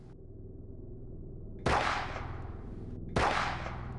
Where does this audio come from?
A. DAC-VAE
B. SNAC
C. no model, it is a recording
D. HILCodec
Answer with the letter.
C